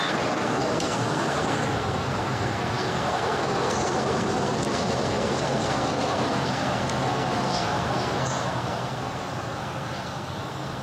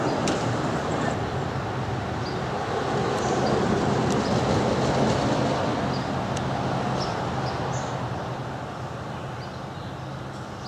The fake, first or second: first